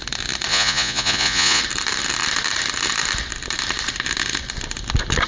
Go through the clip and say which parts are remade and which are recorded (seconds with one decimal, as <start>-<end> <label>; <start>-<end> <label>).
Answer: 0.0-0.5 recorded; 0.5-1.6 remade; 1.6-5.3 recorded